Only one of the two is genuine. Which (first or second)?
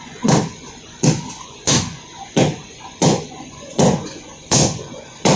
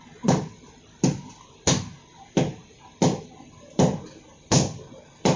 second